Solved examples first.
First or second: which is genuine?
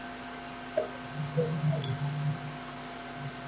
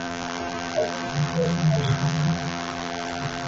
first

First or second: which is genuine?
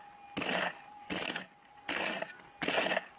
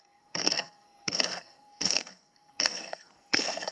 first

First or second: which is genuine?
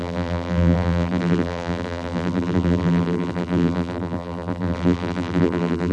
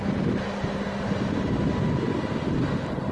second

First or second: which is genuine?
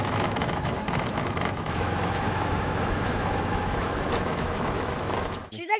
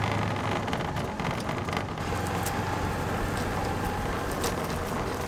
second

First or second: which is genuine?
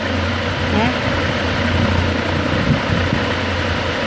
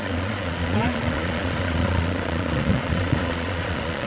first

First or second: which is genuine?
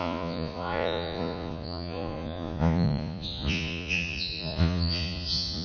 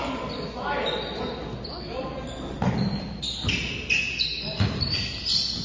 second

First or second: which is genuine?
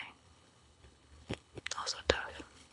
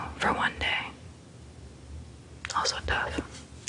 second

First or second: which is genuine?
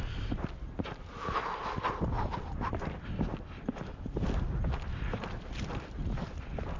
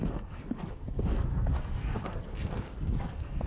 first